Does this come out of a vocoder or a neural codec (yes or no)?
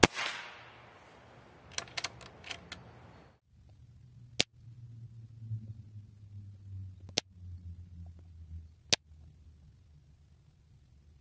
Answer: no